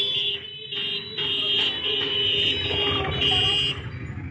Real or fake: real